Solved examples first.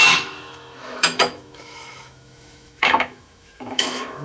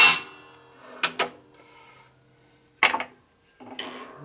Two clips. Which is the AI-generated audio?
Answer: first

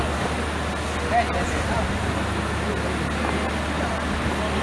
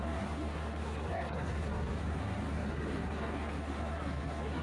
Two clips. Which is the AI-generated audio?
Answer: second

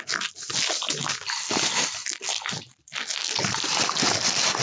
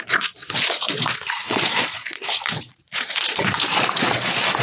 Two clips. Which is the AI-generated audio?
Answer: second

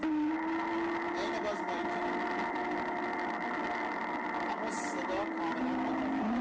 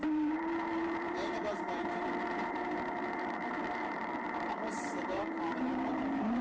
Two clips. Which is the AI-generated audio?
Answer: second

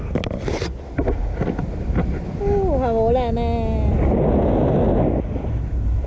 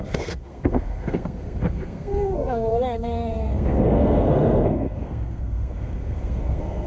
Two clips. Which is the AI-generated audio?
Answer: second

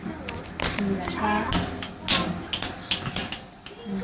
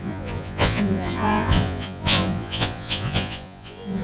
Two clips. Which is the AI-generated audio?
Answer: second